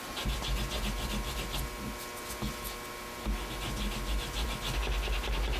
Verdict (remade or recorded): recorded